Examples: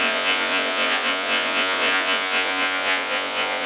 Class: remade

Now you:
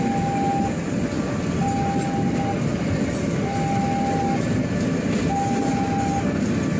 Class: recorded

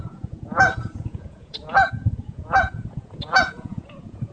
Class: remade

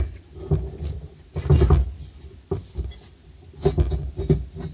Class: recorded